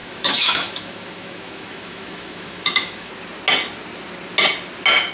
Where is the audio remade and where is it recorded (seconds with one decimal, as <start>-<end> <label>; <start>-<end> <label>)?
0.0-3.1 remade; 3.1-5.1 recorded